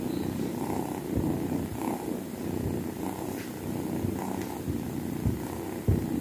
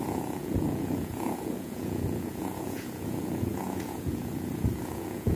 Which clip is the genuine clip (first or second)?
first